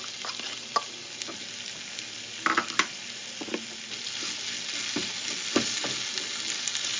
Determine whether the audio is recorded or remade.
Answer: recorded